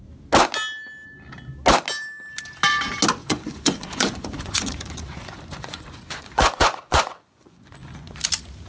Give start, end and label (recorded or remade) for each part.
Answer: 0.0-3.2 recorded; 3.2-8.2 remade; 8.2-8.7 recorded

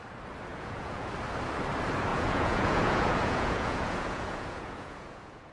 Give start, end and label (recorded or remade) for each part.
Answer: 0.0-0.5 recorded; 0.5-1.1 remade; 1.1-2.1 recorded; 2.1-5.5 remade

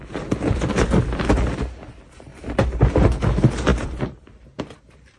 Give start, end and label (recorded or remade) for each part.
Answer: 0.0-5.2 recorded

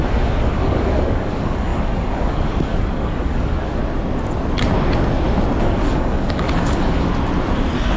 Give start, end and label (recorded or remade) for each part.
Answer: 0.0-3.8 remade; 3.8-5.6 recorded; 5.6-7.1 remade; 7.1-8.0 recorded

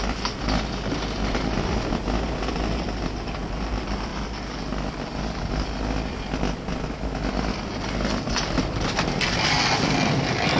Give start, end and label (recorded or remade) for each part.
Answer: 0.0-10.6 recorded

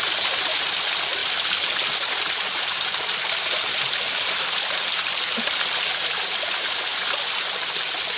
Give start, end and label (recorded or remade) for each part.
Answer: 0.0-8.2 recorded